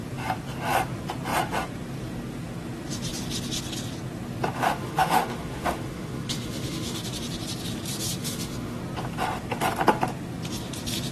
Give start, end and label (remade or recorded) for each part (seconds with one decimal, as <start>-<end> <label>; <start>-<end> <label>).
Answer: 0.0-4.6 recorded; 4.6-7.0 remade; 7.0-8.2 recorded; 8.2-8.8 remade; 8.8-11.1 recorded